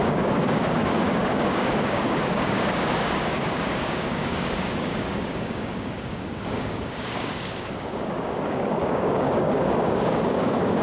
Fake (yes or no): yes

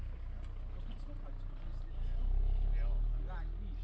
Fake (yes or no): no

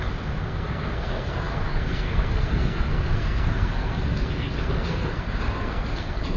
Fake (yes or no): yes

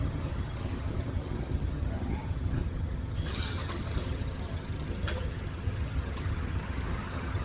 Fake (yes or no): yes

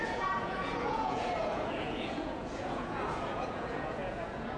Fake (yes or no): yes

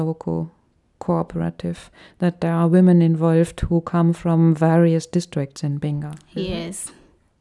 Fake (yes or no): no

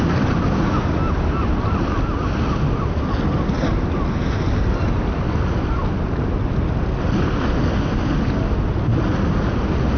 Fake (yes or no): no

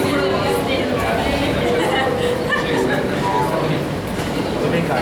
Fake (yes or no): no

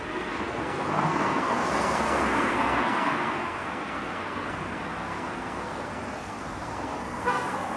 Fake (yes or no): yes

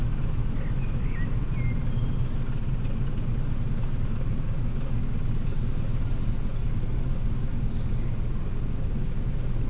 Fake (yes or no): no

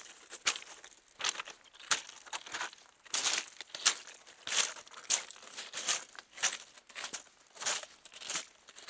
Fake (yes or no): no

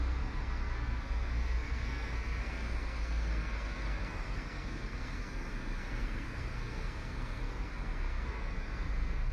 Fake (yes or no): yes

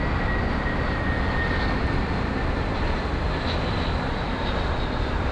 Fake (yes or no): no